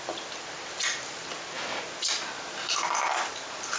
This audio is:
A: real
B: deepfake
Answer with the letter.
A